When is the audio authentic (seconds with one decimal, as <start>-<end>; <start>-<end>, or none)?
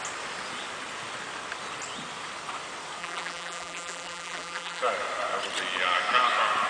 0.0-3.0; 4.8-6.7